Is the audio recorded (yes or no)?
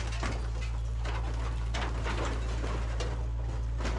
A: yes